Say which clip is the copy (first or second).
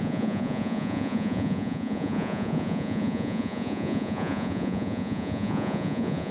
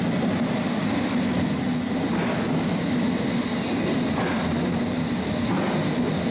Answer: first